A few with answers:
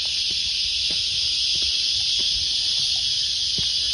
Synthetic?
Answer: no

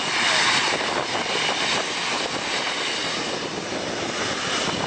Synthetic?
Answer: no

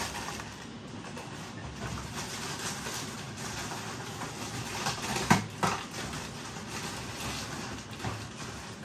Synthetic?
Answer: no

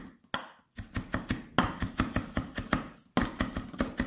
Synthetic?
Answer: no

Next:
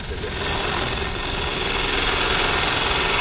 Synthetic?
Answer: no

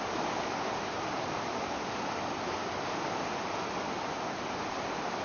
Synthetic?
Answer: no